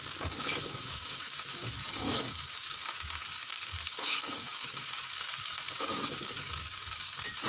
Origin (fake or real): fake